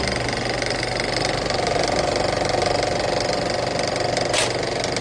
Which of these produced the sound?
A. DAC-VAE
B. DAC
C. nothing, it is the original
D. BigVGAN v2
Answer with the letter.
C